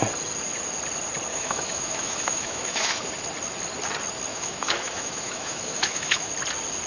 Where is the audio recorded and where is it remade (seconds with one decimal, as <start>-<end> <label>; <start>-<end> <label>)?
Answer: 0.0-1.3 recorded; 1.3-3.1 remade; 3.1-4.3 recorded; 4.3-6.3 remade; 6.3-6.9 recorded